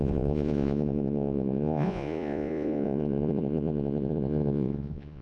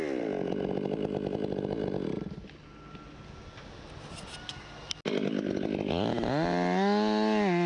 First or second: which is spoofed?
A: first